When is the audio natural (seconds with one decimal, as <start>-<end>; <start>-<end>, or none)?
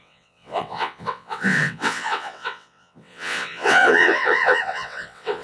none